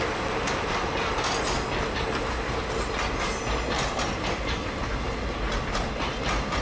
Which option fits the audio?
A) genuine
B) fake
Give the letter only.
A